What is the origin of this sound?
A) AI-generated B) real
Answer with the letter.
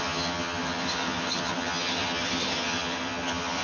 A